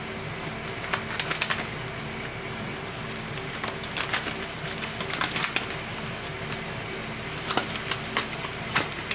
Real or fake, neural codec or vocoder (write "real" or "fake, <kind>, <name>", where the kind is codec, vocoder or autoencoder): real